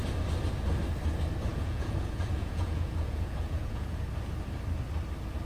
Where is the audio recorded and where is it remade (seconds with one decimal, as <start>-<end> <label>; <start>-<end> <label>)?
0.0-1.5 recorded; 1.5-4.0 remade; 4.0-5.5 recorded